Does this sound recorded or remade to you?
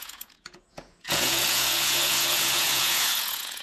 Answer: remade